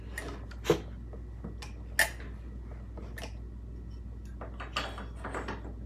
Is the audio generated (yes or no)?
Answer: no